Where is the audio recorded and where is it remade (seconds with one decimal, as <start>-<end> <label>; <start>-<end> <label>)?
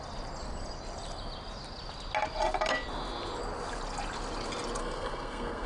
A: 0.0-4.8 recorded; 4.8-5.7 remade